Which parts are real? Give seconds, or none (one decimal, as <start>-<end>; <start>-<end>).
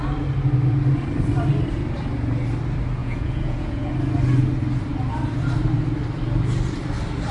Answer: 0.0-3.0; 3.9-7.3